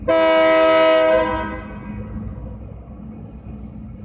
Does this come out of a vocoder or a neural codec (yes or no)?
no